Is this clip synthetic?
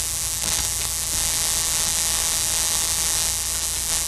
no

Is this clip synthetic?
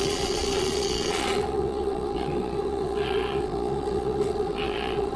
yes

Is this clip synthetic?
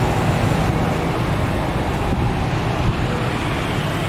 yes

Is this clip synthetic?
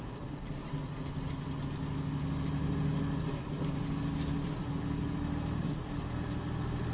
no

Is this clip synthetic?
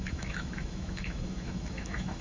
yes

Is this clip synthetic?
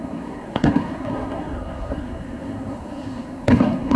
yes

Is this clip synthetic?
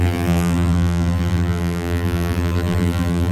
yes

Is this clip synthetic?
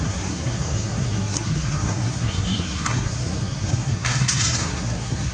yes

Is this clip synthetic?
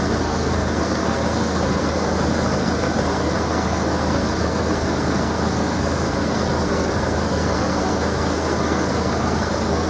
yes